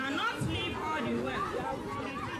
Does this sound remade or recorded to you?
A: recorded